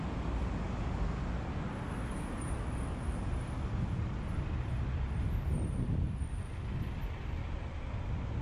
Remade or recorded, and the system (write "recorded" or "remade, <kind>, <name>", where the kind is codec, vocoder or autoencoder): recorded